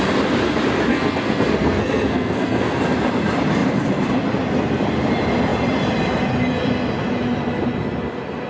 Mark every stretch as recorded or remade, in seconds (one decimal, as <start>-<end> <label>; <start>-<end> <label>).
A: 0.0-0.9 recorded; 0.9-2.8 remade; 2.8-8.5 recorded